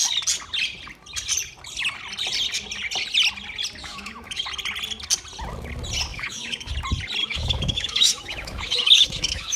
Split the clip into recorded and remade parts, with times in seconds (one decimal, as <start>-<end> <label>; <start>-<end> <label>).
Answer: 0.0-3.8 recorded; 3.8-4.4 remade; 4.4-6.1 recorded; 6.1-6.7 remade; 6.7-7.2 recorded; 7.2-9.6 remade